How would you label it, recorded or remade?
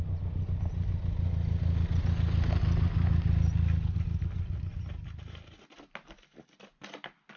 recorded